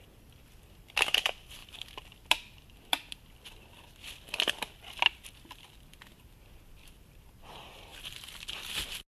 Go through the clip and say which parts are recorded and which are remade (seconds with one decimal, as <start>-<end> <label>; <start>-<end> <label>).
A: 0.0-9.1 recorded

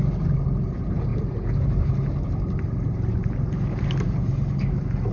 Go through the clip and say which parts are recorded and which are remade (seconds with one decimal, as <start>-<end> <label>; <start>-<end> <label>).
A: 0.0-5.1 recorded

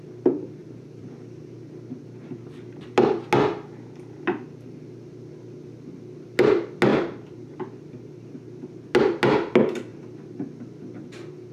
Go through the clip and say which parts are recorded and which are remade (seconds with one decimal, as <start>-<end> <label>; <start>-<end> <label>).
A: 0.0-0.6 recorded; 0.6-1.4 remade; 1.4-11.5 recorded

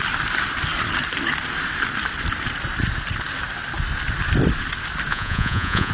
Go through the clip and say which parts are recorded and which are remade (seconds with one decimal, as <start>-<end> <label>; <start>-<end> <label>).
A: 0.0-5.1 recorded; 5.1-5.9 remade

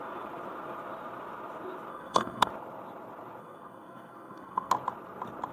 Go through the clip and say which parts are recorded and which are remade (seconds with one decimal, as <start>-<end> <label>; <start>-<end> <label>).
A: 0.0-1.9 recorded; 1.9-2.5 remade; 2.5-3.4 recorded; 3.4-4.7 remade; 4.7-5.5 recorded